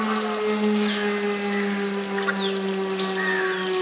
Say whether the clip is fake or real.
real